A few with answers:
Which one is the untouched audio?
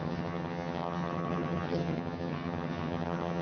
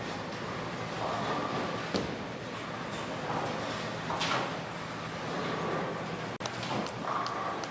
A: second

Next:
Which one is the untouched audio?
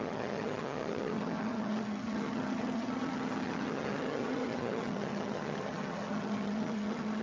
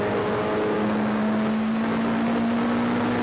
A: second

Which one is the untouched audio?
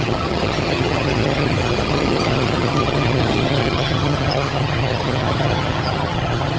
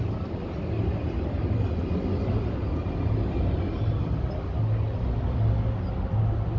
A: second